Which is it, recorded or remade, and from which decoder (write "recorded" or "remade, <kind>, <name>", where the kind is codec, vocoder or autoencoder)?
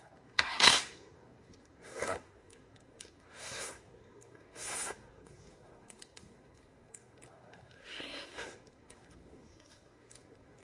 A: remade, codec, SNAC